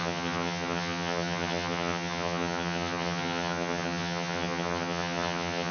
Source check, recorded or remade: remade